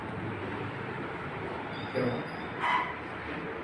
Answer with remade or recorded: remade